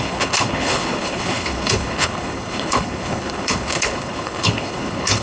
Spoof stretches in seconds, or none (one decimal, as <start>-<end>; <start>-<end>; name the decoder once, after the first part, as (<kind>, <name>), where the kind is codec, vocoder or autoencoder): 0.0-5.2 (codec, HILCodec)